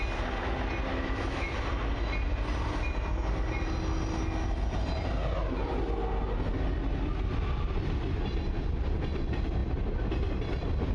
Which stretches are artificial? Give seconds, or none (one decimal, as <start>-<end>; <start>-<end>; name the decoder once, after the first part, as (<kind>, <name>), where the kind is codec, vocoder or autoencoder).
0.9-1.5 (autoencoder, DAC-VAE)